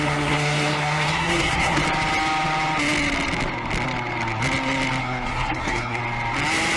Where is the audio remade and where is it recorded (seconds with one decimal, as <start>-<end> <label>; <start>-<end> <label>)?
0.0-1.8 remade; 1.8-5.0 recorded; 5.0-6.0 remade; 6.0-6.8 recorded